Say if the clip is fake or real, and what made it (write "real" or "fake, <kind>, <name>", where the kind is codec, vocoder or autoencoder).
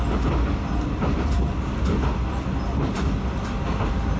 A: real